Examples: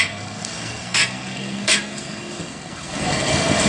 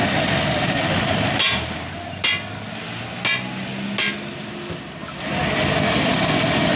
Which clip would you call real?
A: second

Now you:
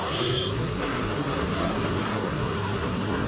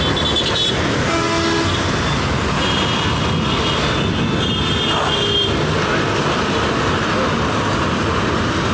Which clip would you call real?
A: second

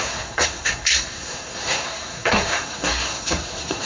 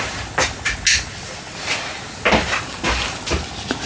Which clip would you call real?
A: second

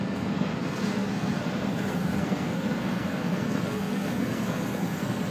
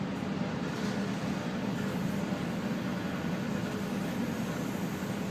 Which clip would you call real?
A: second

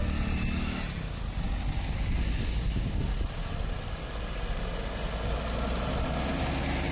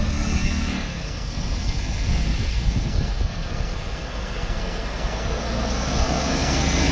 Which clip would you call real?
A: first